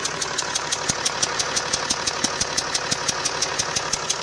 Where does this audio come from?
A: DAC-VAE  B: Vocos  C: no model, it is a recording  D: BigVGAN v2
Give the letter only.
B